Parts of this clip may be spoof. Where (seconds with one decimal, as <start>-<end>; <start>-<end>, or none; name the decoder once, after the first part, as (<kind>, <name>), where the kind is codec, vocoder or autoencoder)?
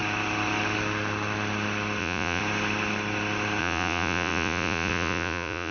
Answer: 2.0-2.4 (vocoder, Vocos); 3.6-5.7